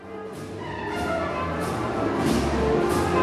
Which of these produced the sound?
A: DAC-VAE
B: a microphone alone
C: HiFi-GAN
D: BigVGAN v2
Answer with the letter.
D